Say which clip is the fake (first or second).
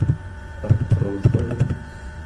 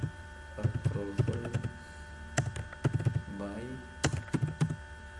first